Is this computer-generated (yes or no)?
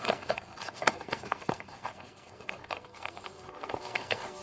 yes